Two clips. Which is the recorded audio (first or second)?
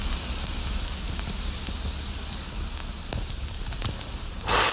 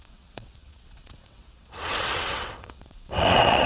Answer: first